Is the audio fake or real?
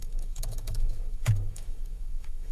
fake